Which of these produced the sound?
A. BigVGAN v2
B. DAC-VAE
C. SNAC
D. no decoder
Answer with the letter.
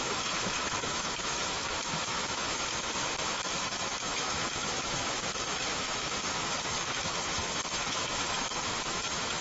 B